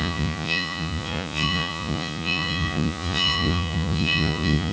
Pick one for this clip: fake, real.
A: fake